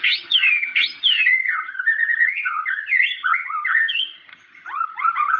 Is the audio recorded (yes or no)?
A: no